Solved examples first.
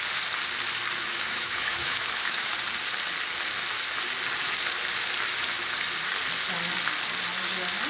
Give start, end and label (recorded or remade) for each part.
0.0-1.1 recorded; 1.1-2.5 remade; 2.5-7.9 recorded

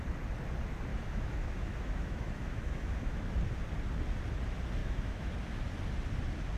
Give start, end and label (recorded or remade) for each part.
0.0-0.9 recorded; 0.9-3.4 remade; 3.4-4.8 recorded; 4.8-5.3 remade; 5.3-6.6 recorded

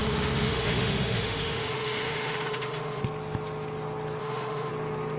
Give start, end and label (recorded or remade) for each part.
0.0-3.0 remade; 3.0-4.2 recorded; 4.2-4.7 remade; 4.7-5.2 recorded

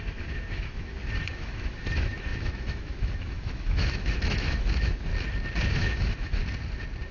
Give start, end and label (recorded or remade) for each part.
0.0-5.1 remade; 5.1-5.7 recorded; 5.7-6.4 remade; 6.4-7.1 recorded

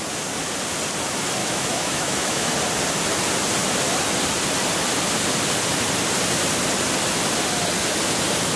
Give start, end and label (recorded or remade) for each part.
0.0-1.4 recorded; 1.4-2.5 remade; 2.5-8.6 recorded

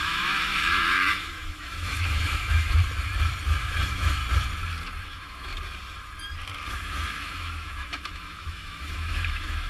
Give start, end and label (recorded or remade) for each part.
0.0-2.8 remade; 2.8-3.6 recorded; 3.6-4.2 remade; 4.2-5.0 recorded; 5.0-5.5 remade; 5.5-6.7 recorded; 6.7-9.7 remade